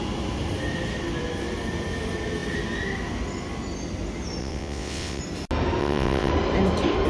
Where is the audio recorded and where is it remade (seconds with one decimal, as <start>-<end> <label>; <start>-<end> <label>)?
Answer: 0.0-4.4 recorded; 4.4-5.2 remade; 5.2-5.8 recorded; 5.8-6.3 remade; 6.3-7.1 recorded